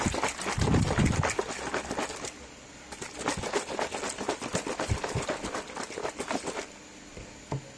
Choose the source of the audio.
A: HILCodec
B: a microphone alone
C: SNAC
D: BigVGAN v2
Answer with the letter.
B